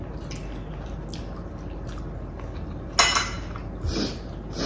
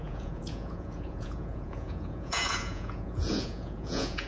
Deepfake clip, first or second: second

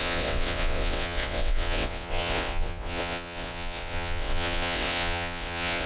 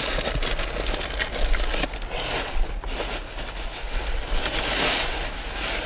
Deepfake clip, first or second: first